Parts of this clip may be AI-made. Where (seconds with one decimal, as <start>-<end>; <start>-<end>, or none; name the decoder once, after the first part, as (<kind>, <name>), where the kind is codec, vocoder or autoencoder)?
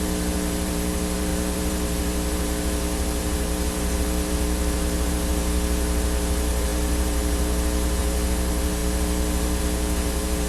0.0-10.5 (vocoder, BigVGAN v2)